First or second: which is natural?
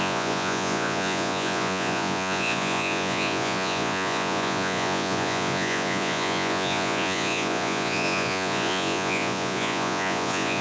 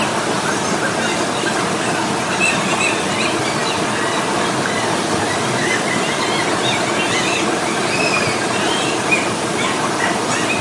second